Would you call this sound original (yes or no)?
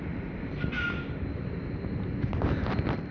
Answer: yes